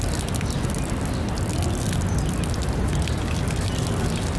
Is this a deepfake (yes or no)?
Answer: no